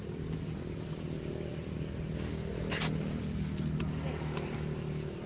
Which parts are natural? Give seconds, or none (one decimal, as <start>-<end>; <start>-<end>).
0.0-5.3